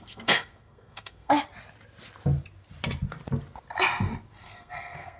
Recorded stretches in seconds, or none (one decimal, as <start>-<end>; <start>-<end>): 1.3-4.4